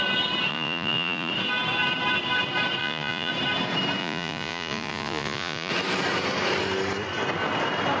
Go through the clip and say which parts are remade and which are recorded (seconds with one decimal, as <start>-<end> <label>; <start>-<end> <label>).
0.0-0.5 recorded; 0.5-1.3 remade; 1.3-2.8 recorded; 2.8-3.3 remade; 3.3-4.0 recorded; 4.0-5.7 remade; 5.7-8.0 recorded